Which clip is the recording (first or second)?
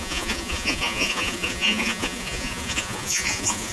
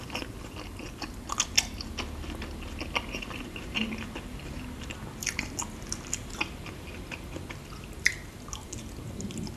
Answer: second